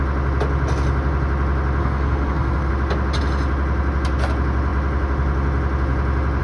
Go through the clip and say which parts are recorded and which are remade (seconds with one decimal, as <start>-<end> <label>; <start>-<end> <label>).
0.0-1.8 recorded; 1.8-2.7 remade; 2.7-6.4 recorded